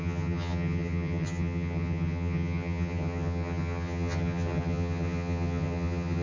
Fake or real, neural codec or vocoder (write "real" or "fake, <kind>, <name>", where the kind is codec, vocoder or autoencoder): fake, vocoder, HiFi-GAN